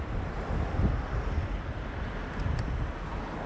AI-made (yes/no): no